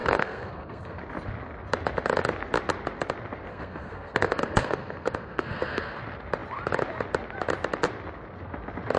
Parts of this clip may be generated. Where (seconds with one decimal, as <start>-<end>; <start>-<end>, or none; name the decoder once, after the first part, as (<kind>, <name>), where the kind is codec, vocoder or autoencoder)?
0.0-1.0 (codec, SNAC); 3.5-6.0